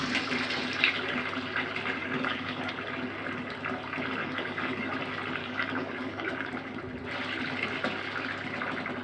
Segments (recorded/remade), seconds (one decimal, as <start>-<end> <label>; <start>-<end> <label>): 0.0-2.0 recorded; 2.0-2.7 remade; 2.7-4.2 recorded; 4.2-4.9 remade; 4.9-5.4 recorded; 5.4-6.8 remade; 6.8-9.0 recorded